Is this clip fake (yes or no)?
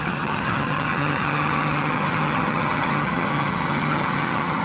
yes